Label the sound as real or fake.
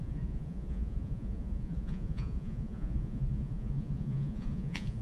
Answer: fake